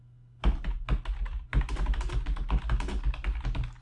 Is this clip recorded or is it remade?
recorded